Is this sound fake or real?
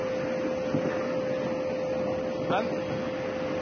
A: real